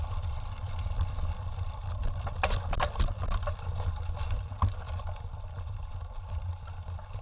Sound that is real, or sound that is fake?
real